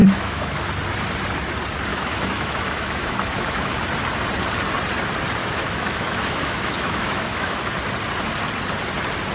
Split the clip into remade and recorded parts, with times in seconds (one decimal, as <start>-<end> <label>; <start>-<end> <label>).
0.0-0.7 remade; 0.7-1.9 recorded; 1.9-3.7 remade; 3.7-5.4 recorded; 5.4-7.7 remade; 7.7-9.3 recorded